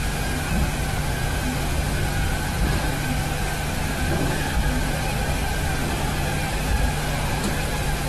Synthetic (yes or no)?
no